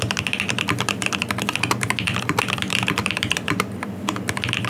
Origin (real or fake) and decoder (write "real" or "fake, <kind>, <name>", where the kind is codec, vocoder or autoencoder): fake, vocoder, BigVGAN v2